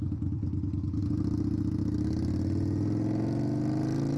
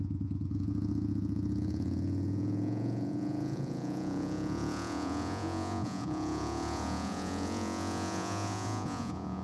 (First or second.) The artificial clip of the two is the second